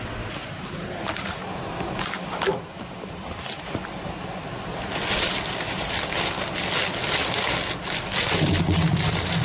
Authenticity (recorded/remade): recorded